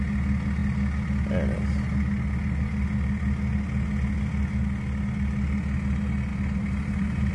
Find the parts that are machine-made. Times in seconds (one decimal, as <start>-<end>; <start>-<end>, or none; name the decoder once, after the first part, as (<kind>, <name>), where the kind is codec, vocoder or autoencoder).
6.3-7.3 (vocoder, BigVGAN v2)